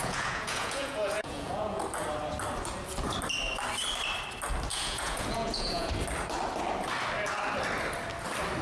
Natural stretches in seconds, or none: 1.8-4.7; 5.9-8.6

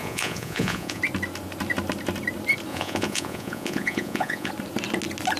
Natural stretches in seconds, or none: 1.0-2.7; 4.5-5.4

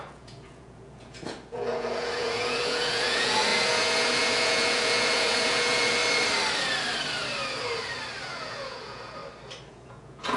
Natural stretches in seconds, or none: 6.0-8.2; 9.2-9.7

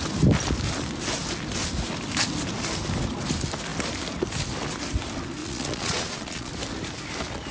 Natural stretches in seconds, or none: 0.0-5.4; 6.5-7.5

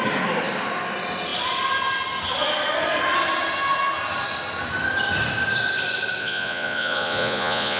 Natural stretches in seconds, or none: 0.0-6.2

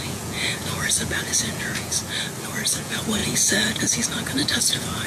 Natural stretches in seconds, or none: 2.0-2.8

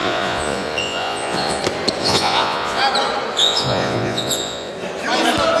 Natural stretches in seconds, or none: 1.6-2.0; 2.8-3.4; 4.7-5.6